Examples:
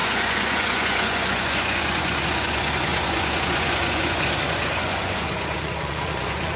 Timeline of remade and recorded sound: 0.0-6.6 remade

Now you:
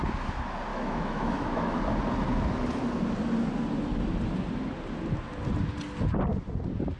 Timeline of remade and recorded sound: 0.0-0.7 recorded; 0.7-1.8 remade; 1.8-7.0 recorded